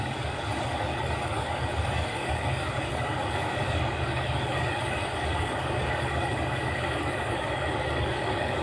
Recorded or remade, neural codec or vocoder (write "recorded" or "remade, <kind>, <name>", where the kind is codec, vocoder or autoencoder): remade, codec, DAC